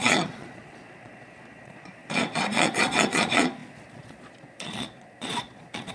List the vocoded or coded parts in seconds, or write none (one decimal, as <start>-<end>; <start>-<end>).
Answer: 0.0-5.9